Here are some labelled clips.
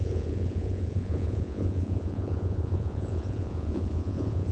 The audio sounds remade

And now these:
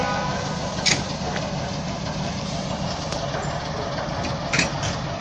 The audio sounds recorded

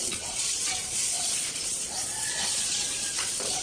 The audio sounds remade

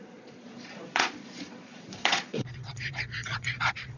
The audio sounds remade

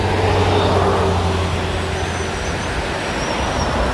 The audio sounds recorded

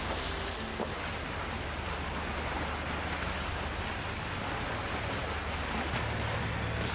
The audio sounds recorded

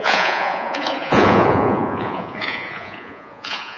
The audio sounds remade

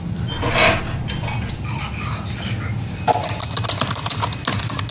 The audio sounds recorded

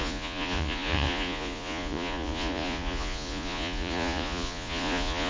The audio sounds remade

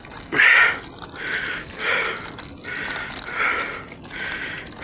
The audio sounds recorded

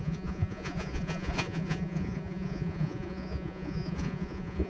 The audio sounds remade